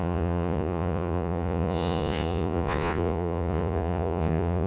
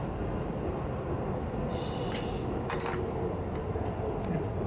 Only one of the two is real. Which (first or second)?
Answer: second